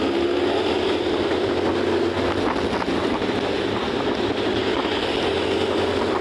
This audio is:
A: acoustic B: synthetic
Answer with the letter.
A